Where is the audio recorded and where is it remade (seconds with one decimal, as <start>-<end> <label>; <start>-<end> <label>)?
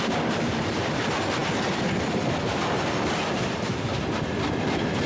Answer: 0.0-5.1 recorded